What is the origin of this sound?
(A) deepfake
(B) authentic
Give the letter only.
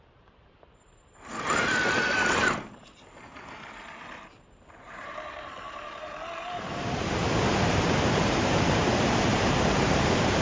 A